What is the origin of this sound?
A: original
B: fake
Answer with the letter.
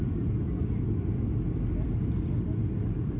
A